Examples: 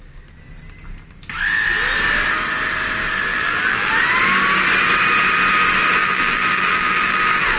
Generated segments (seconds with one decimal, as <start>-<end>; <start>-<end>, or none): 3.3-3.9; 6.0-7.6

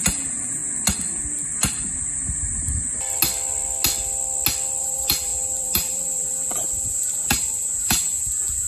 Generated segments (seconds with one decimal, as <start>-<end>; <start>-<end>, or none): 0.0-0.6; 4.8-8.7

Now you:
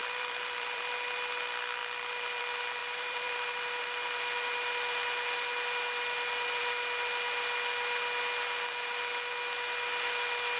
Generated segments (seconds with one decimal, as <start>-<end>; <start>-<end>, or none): 0.0-0.8; 2.8-3.8

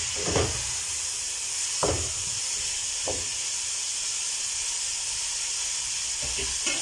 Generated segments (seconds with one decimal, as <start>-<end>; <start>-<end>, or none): none